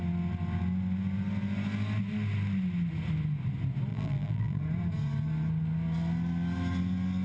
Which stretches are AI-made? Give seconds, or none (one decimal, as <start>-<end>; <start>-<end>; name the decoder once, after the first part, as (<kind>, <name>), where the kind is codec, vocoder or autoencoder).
3.9-4.6 (vocoder, BigVGAN v2)